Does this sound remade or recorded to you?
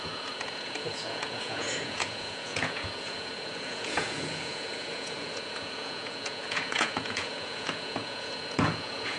remade